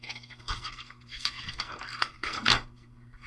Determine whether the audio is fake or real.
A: fake